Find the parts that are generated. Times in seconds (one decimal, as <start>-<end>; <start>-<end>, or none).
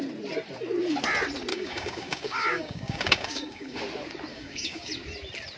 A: 1.5-3.8; 4.3-4.9